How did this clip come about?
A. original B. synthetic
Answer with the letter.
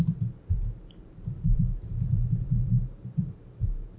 B